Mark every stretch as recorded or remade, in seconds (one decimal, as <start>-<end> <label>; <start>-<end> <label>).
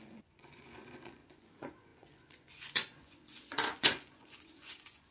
0.0-5.1 remade